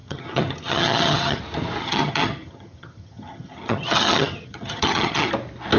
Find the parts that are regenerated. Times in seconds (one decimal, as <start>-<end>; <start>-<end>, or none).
0.0-1.4; 1.8-5.3